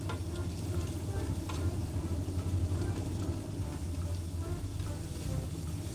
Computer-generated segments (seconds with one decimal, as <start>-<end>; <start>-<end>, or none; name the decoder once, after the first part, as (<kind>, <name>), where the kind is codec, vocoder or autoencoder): 0.4-3.3 (vocoder, BigVGAN v2)